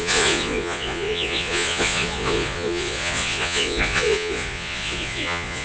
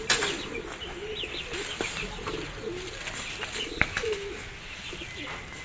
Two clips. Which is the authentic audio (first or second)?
second